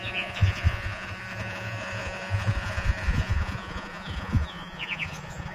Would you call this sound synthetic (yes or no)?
yes